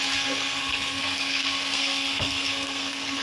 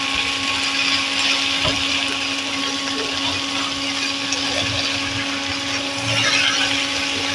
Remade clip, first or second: first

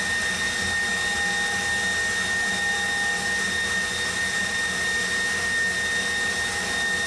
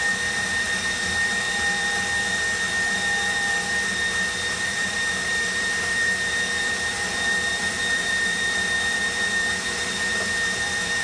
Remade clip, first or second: second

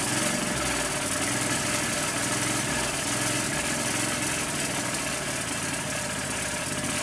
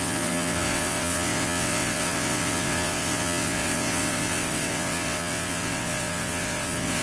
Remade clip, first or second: second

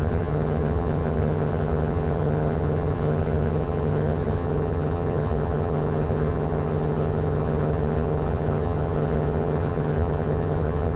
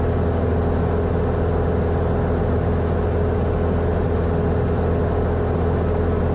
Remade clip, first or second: first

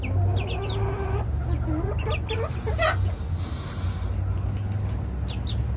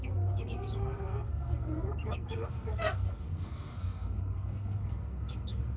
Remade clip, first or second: second